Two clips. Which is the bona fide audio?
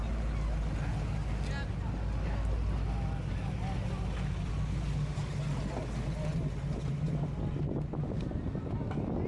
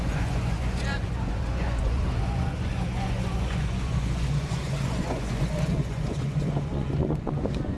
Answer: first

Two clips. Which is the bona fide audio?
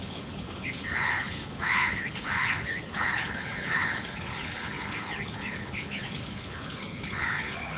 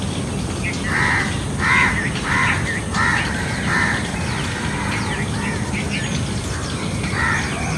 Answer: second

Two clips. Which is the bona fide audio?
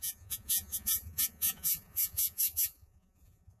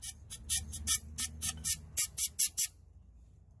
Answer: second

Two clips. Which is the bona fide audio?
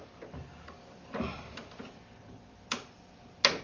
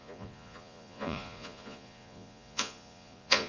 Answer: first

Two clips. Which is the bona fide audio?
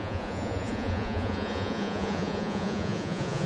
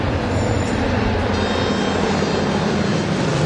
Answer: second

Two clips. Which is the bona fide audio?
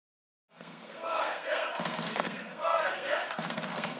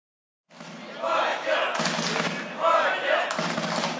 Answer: second